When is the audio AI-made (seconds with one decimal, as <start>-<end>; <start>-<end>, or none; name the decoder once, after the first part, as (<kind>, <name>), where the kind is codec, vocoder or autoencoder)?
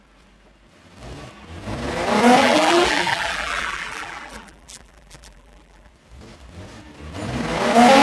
2.4-5.9 (vocoder, BigVGAN v2)